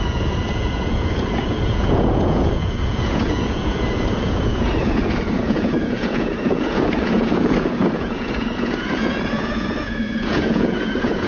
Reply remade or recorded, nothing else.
remade